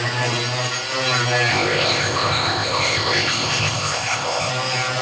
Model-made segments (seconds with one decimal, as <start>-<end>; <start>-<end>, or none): 1.5-4.5

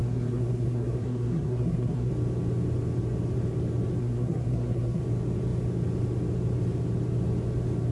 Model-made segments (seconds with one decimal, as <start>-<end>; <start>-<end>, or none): 0.0-2.1; 4.0-5.0

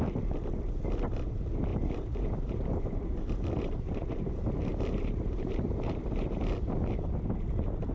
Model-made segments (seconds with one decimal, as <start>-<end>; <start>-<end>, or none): 1.7-4.3; 4.7-7.1

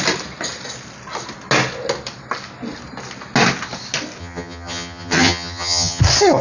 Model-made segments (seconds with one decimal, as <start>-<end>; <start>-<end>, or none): 4.2-6.0

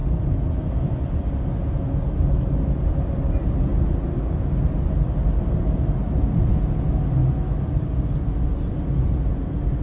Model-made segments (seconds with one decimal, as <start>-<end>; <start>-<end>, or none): none

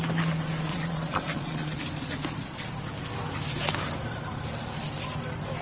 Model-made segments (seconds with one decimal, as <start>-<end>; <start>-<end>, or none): 0.7-1.8

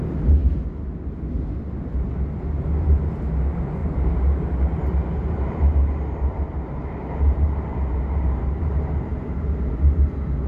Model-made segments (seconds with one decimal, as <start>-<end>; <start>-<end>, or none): 0.0-0.4; 2.8-10.5

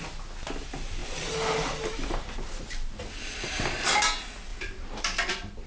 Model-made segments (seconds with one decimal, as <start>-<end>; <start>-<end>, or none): 1.0-2.6; 4.5-5.3